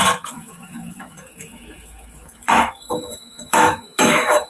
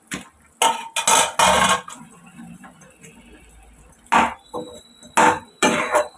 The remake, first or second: first